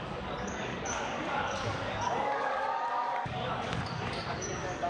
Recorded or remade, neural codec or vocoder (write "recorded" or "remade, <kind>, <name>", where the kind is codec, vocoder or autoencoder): remade, codec, DAC